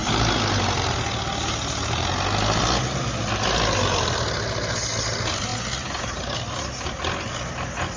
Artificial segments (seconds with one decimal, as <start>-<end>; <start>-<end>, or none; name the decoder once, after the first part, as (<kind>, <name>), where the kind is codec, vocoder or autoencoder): none